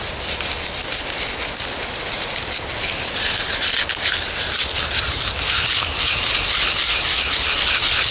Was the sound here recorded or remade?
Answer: recorded